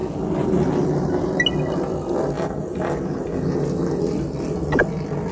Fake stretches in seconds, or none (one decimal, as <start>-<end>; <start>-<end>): none

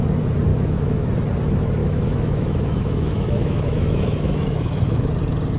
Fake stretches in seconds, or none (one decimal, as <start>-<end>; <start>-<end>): 0.5-1.1; 1.8-5.1